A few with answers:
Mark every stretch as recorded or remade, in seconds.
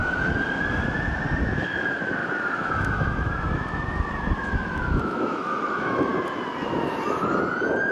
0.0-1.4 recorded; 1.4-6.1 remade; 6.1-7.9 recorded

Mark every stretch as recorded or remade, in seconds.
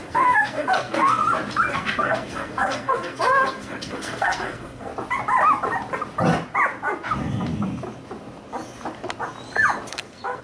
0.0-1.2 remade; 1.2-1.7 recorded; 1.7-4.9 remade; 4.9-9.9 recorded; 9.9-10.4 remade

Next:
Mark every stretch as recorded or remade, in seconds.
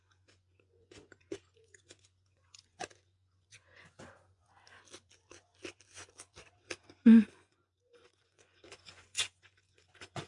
0.0-4.4 remade; 4.4-7.3 recorded; 7.3-10.3 remade